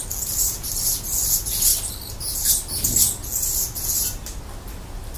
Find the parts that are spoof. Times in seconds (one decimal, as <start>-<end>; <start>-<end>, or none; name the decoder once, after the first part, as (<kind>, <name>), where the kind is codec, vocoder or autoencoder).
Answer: none